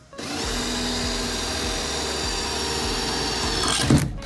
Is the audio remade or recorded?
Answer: recorded